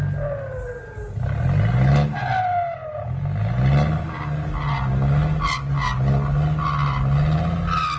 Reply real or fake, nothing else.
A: real